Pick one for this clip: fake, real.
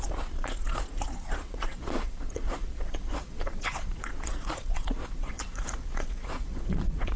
fake